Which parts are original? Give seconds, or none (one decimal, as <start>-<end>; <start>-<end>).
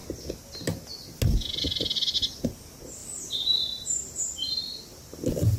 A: 0.0-3.0; 4.5-5.6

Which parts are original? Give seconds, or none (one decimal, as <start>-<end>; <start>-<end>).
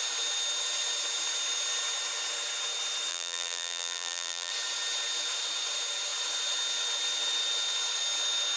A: 0.0-3.1; 4.5-8.6